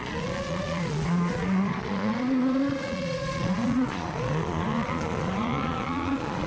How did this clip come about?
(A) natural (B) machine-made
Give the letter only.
B